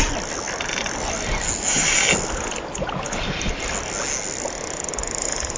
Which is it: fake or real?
real